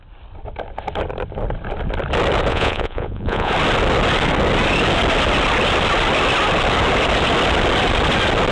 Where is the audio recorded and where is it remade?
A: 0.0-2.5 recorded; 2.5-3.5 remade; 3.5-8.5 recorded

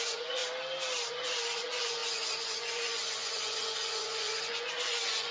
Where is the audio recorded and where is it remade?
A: 0.0-0.4 remade; 0.4-1.1 recorded; 1.1-5.3 remade